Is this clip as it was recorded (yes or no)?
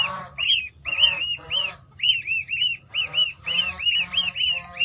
no